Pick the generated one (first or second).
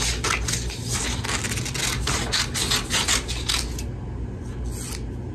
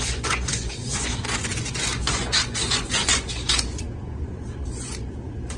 second